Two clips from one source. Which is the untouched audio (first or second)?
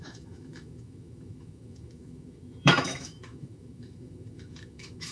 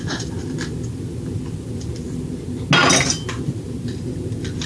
second